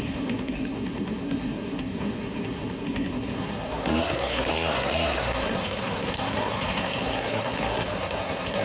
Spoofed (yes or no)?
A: yes